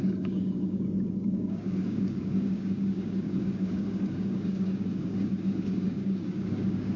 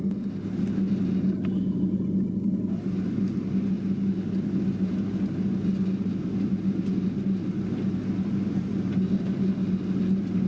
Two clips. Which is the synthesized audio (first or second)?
first